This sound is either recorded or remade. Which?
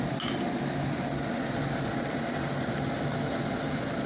recorded